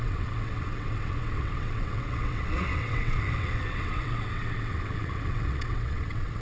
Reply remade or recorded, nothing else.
remade